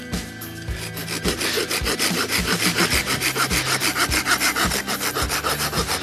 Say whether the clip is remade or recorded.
recorded